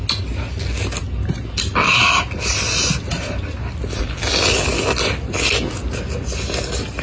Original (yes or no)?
yes